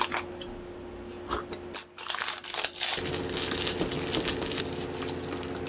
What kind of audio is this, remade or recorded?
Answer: recorded